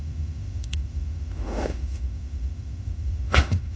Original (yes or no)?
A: no